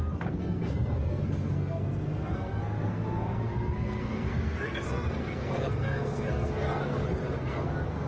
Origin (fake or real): fake